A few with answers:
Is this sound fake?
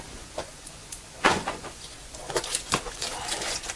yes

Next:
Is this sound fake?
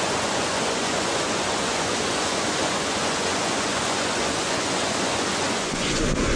yes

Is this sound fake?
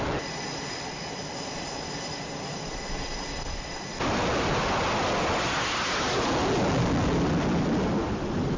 no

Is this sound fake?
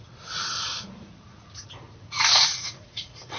yes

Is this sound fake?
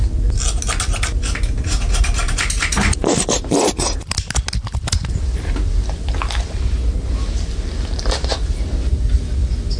no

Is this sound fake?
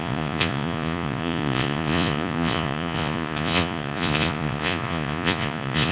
yes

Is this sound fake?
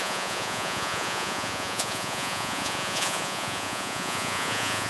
yes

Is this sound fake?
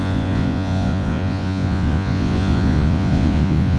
yes